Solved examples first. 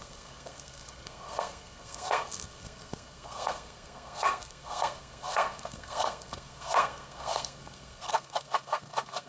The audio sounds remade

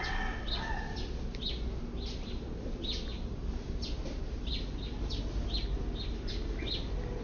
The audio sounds recorded